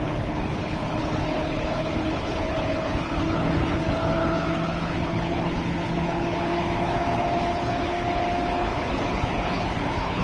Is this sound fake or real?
fake